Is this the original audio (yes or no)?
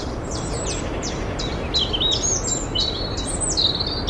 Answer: yes